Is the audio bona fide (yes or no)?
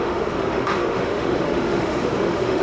no